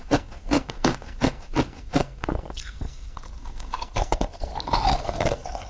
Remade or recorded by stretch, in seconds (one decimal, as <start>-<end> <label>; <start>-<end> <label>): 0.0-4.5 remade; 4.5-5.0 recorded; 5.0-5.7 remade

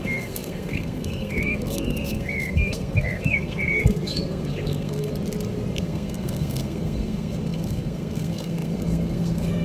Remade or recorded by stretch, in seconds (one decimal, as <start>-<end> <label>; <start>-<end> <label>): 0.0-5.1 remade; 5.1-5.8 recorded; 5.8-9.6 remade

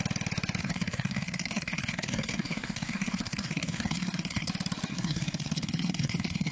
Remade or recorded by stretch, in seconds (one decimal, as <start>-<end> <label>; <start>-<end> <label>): 0.0-0.6 recorded; 0.6-4.5 remade; 4.5-4.9 recorded; 4.9-6.5 remade

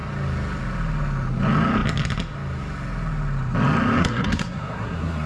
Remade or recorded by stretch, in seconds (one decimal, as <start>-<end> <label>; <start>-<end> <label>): 0.0-4.0 recorded; 4.0-5.3 remade

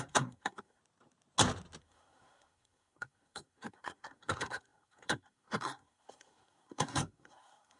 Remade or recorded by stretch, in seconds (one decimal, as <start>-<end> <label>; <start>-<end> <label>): 0.0-0.8 remade; 0.8-1.8 recorded; 1.8-7.8 remade

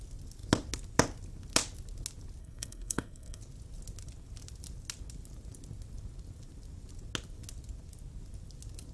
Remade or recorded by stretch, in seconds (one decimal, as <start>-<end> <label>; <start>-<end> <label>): 0.0-2.4 recorded; 2.4-3.4 remade; 3.4-8.9 recorded

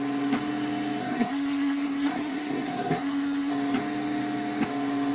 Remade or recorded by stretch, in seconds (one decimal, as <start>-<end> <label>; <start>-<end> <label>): 0.0-1.0 recorded; 1.0-3.5 remade; 3.5-5.1 recorded